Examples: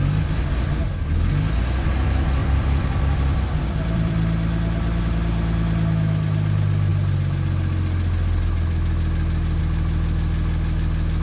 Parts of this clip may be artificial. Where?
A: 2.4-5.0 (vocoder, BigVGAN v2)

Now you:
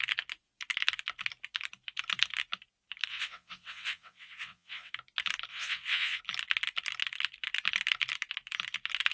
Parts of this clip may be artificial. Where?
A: 3.1-4.9 (vocoder, WaveNeXt); 5.5-6.2

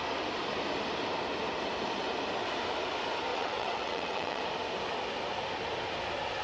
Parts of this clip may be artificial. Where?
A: 3.3-4.4 (vocoder, WaveNeXt)

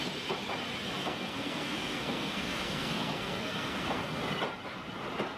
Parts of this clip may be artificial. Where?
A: 1.0-4.2 (codec, SNAC)

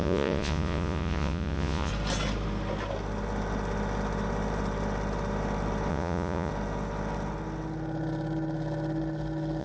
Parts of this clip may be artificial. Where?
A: 0.0-1.9 (vocoder, Vocos); 5.9-6.5

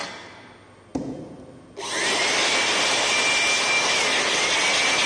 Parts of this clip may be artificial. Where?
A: none

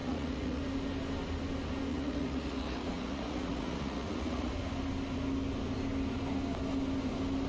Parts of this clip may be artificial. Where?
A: 0.0-0.6 (vocoder, Vocos); 1.9-4.5